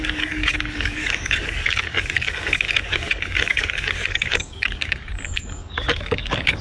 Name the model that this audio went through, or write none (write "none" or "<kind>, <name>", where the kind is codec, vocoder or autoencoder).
codec, DAC